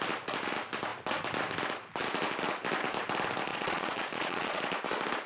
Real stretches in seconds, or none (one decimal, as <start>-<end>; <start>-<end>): 0.0-3.5; 4.6-5.3